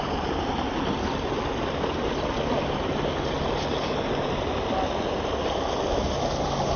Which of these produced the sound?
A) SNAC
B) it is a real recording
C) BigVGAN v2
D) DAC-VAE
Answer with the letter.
B